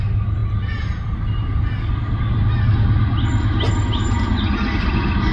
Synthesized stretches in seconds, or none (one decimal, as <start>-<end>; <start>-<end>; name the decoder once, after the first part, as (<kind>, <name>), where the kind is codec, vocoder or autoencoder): none